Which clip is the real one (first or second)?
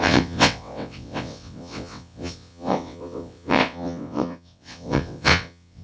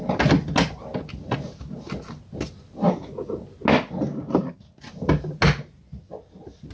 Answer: second